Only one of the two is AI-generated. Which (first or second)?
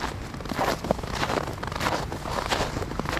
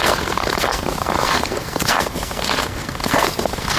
second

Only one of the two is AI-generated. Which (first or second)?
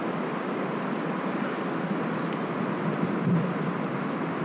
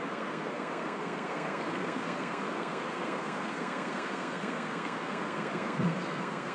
second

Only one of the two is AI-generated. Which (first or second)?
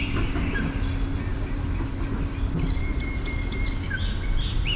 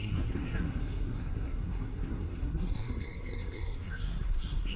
second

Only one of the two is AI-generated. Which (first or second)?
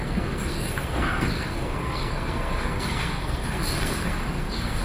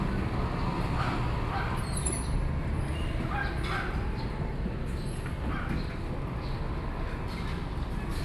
first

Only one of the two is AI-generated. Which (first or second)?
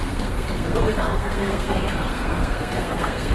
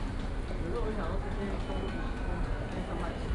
first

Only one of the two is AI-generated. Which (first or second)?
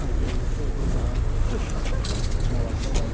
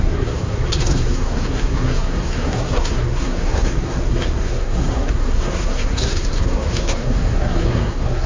second